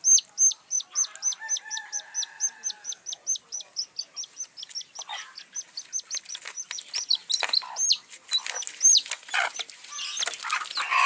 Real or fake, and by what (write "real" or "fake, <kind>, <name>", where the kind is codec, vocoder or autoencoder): real